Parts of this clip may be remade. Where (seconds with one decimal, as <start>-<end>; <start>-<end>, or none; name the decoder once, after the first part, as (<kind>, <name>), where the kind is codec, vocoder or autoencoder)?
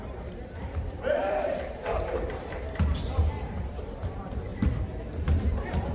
0.0-4.5 (vocoder, BigVGAN v2); 5.4-5.9